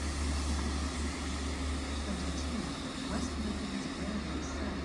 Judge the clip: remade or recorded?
recorded